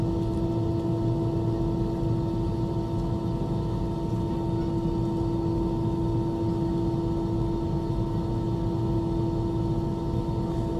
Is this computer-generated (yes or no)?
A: no